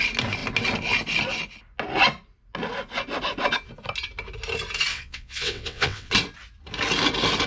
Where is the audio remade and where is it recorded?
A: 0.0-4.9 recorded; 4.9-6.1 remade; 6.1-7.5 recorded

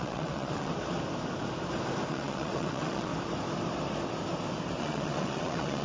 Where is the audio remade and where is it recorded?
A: 0.0-0.7 remade; 0.7-2.1 recorded; 2.1-3.1 remade; 3.1-4.8 recorded; 4.8-5.8 remade

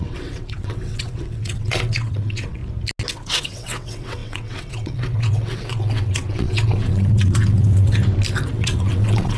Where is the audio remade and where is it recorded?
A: 0.0-2.6 remade; 2.6-3.1 recorded; 3.1-8.0 remade; 8.0-8.5 recorded; 8.5-9.4 remade